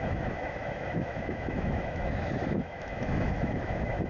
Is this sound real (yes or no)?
no